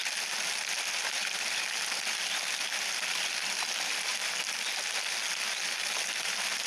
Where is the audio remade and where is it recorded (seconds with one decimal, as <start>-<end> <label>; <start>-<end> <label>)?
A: 0.0-6.7 recorded